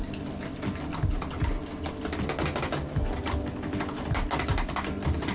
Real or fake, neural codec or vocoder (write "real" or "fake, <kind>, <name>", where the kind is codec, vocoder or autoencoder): real